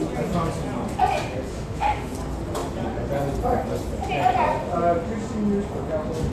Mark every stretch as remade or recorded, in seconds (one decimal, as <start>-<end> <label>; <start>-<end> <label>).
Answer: 0.0-1.5 recorded; 1.5-2.1 remade; 2.1-6.3 recorded